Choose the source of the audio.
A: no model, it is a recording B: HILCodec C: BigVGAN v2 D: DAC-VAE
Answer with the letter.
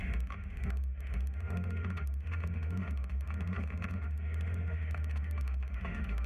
D